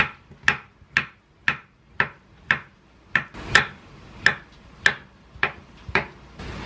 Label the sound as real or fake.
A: real